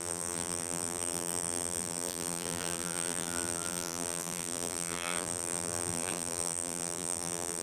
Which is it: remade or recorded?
remade